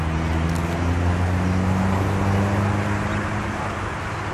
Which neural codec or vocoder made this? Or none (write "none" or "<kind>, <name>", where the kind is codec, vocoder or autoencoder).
none